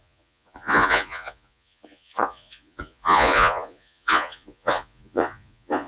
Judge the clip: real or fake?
fake